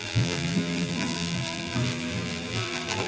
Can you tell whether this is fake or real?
fake